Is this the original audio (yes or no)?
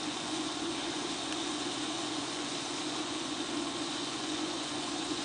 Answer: no